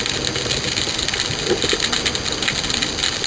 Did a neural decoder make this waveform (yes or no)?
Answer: no